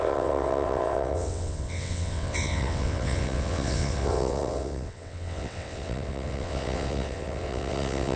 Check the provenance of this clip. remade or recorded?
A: remade